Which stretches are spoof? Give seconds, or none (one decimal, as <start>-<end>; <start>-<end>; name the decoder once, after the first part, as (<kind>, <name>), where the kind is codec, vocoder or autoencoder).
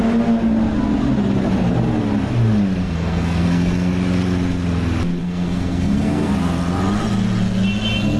2.8-3.9 (codec, SNAC); 5.2-6.3